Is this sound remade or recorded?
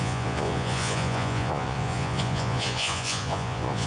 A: remade